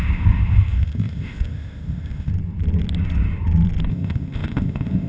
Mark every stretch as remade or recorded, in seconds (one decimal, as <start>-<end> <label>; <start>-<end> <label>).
0.0-2.3 remade; 2.3-3.9 recorded; 3.9-5.1 remade